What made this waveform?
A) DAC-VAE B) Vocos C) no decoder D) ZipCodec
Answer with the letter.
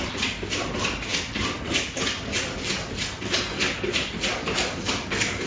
C